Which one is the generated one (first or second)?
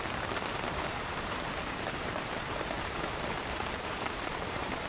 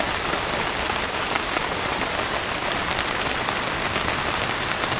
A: first